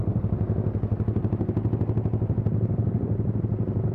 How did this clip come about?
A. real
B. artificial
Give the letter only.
A